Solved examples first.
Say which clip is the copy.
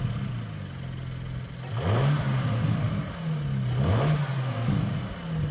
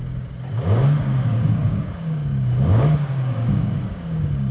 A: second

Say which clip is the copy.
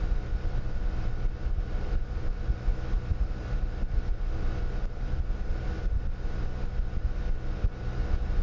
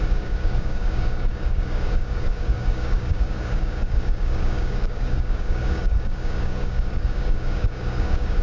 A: second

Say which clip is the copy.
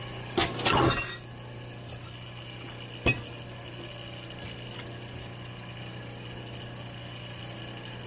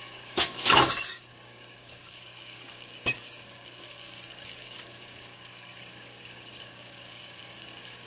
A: second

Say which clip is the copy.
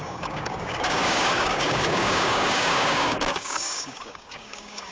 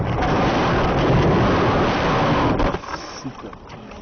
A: first